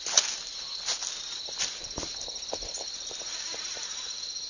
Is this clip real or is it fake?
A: real